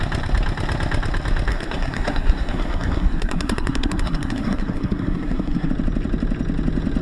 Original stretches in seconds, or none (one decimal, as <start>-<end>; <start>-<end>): 0.0-1.5; 5.7-7.0